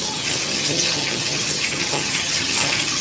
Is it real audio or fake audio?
fake